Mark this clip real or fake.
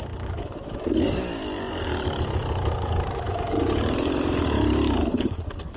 fake